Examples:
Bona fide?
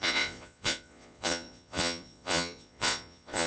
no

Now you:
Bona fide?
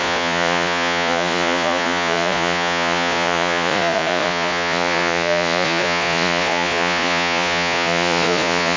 no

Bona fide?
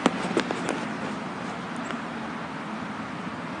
yes